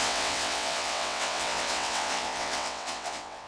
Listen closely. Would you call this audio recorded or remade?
remade